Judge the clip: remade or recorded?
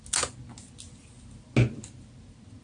recorded